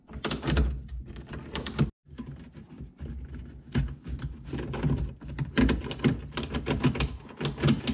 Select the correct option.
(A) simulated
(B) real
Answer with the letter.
B